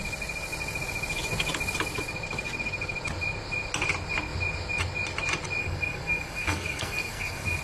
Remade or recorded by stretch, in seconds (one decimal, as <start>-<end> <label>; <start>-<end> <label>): 0.0-5.6 recorded; 5.6-7.6 remade